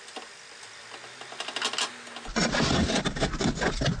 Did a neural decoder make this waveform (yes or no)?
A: no